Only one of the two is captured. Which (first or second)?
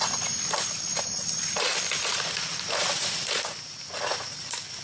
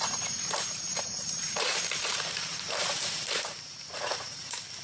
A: first